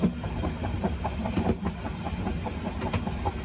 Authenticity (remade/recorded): recorded